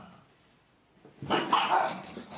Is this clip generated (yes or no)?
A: no